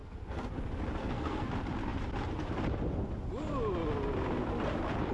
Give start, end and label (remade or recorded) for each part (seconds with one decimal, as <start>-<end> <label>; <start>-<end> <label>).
0.0-0.5 remade; 0.5-1.0 recorded; 1.0-1.5 remade; 1.5-5.1 recorded